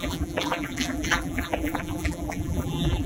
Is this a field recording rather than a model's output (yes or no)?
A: no